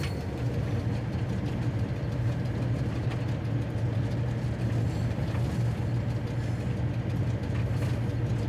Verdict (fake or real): real